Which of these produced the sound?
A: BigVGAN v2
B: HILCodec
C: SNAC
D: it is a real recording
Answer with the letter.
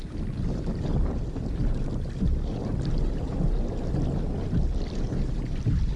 D